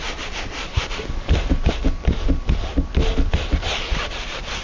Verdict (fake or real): real